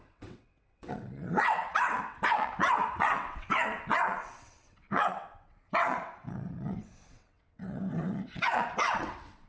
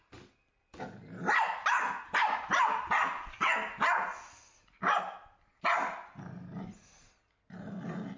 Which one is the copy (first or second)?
first